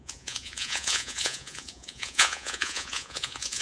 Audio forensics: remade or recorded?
remade